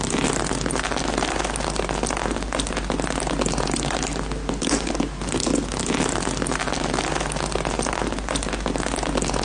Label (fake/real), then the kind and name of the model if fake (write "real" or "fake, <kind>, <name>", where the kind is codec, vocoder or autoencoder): real